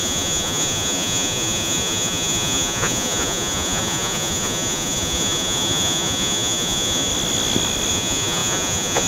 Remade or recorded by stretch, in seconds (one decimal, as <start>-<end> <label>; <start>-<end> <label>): 0.0-7.1 remade; 7.1-7.9 recorded; 7.9-9.1 remade